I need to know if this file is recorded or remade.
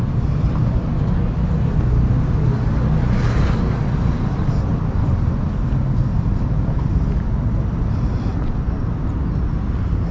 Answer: recorded